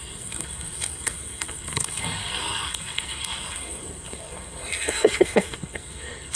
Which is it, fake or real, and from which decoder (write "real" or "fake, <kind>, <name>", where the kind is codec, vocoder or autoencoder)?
fake, codec, SNAC